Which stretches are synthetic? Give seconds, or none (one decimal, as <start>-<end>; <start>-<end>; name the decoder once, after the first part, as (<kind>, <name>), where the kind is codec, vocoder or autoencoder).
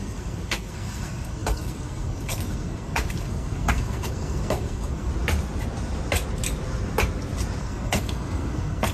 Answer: 0.0-5.1 (codec, SNAC); 7.6-8.9